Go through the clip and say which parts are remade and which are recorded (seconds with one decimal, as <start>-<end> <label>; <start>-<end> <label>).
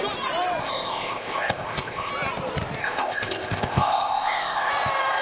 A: 0.0-0.6 recorded; 0.6-2.1 remade; 2.1-2.8 recorded; 2.8-4.7 remade; 4.7-5.2 recorded